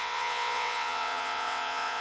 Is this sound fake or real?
fake